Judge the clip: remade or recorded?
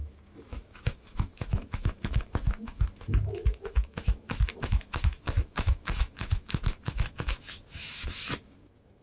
remade